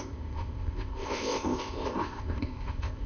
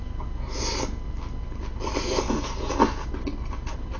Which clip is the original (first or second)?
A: second